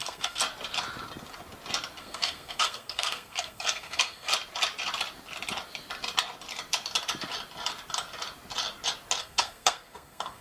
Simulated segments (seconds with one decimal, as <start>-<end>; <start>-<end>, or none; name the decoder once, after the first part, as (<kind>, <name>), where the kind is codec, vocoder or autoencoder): 0.0-0.4 (codec, SNAC); 2.0-4.3; 9.2-10.4